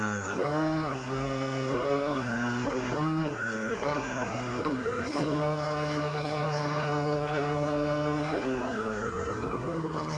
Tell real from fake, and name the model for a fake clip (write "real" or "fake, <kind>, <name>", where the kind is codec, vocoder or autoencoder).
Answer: fake, codec, SNAC